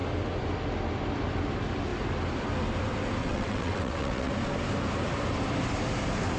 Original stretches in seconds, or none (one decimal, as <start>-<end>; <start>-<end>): 0.0-3.2; 4.3-6.4